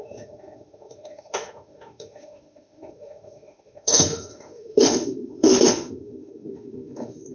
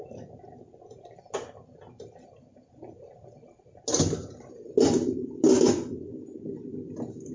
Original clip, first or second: second